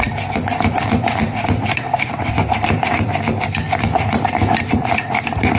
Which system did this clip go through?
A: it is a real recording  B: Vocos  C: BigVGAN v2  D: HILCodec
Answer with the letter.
C